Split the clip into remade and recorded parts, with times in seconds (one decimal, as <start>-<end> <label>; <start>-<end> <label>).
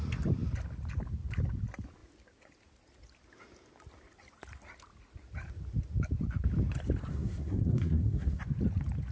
0.0-7.1 recorded; 7.1-8.4 remade; 8.4-9.1 recorded